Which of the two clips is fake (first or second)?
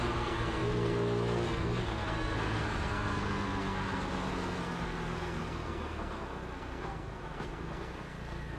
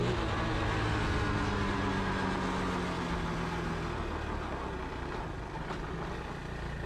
first